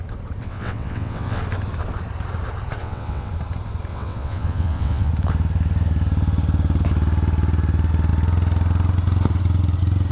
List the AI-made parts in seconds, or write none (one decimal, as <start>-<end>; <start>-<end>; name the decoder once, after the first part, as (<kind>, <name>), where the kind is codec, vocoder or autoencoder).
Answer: 0.4-1.4 (vocoder, WaveNeXt); 2.8-3.3; 3.9-5.1